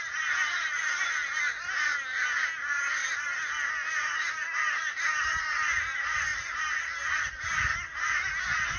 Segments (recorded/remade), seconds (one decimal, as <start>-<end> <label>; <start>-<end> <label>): 0.0-8.8 recorded